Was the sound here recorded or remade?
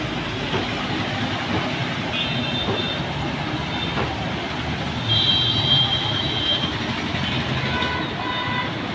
recorded